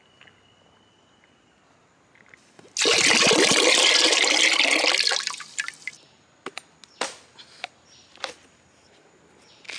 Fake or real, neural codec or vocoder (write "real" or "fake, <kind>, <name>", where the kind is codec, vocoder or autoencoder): real